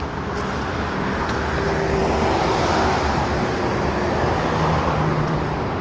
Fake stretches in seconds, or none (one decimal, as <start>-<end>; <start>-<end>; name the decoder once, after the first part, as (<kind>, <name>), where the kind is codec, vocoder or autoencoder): none